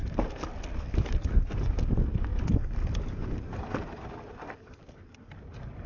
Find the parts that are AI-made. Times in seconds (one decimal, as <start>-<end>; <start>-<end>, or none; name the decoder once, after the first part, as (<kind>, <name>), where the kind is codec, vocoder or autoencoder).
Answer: none